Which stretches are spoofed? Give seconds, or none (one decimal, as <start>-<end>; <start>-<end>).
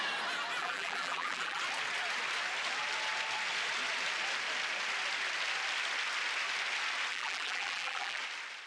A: 0.6-1.6; 7.1-8.2